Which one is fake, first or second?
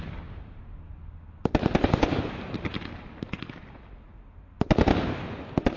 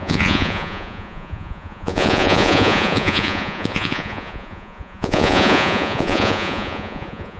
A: second